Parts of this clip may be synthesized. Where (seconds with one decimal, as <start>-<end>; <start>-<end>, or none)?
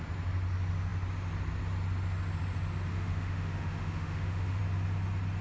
2.9-4.6